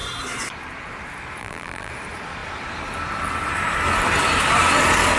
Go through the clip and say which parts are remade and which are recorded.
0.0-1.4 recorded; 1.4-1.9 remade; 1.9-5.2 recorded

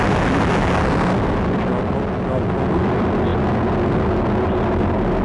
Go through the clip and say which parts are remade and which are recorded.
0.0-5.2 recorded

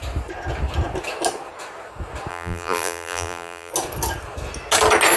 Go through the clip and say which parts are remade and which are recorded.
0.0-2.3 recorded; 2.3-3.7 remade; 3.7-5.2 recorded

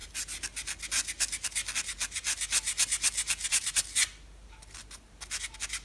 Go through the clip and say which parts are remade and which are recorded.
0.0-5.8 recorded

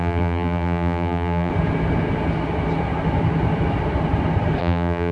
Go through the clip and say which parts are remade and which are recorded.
0.0-1.5 remade; 1.5-4.6 recorded; 4.6-5.1 remade